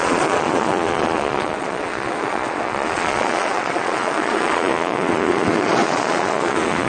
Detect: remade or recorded remade